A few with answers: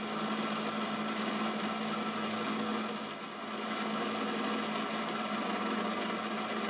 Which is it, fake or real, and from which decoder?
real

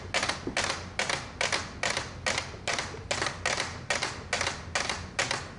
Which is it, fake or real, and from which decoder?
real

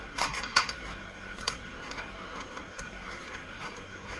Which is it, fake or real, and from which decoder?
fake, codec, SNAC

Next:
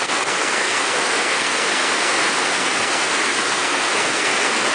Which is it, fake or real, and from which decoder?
fake, codec, SNAC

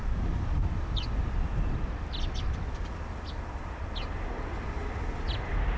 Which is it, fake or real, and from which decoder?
real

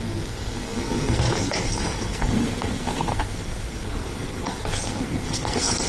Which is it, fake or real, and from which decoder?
fake, codec, SNAC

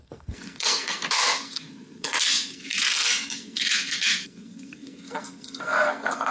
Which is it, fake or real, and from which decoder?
fake, codec, SNAC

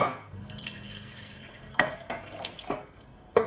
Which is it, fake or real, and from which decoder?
fake, codec, SNAC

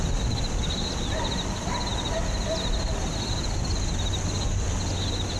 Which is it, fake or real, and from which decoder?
real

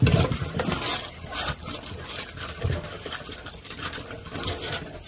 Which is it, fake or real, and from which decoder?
real